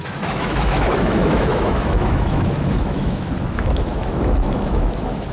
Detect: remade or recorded remade